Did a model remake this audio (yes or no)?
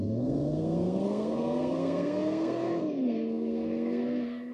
yes